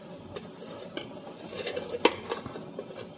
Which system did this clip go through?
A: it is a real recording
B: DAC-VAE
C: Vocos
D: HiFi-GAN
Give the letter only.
A